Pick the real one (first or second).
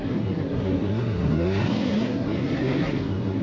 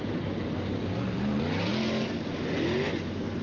second